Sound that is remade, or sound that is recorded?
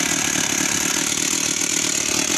recorded